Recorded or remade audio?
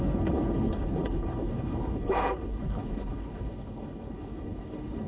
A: remade